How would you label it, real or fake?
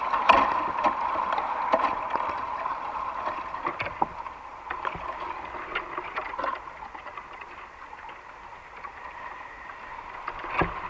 fake